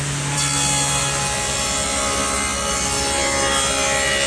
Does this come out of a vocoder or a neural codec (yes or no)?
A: no